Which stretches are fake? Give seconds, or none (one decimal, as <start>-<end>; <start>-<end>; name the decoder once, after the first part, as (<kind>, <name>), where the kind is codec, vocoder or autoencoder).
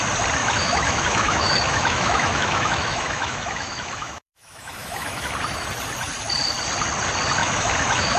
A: 0.4-5.3 (autoencoder, DAC-VAE); 7.4-8.2